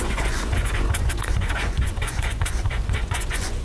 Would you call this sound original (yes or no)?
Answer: no